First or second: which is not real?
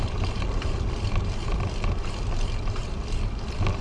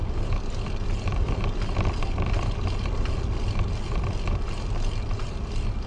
first